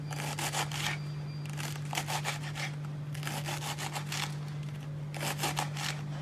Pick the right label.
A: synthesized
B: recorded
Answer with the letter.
B